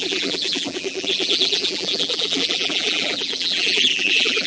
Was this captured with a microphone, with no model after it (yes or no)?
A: no